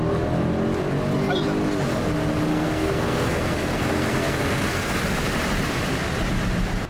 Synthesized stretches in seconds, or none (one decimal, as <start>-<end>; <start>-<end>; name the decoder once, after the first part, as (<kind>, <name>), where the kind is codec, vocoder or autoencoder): 2.5-5.0 (codec, SNAC)